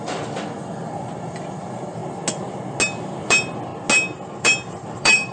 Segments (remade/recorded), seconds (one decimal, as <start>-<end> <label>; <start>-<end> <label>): 0.0-2.0 remade; 2.0-3.2 recorded; 3.2-3.7 remade; 3.7-4.4 recorded; 4.4-5.3 remade